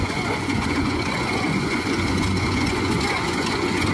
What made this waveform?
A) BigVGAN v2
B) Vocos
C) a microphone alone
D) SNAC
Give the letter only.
B